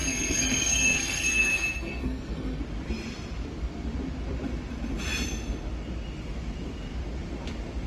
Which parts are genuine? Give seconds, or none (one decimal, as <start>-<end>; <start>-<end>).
2.6-7.9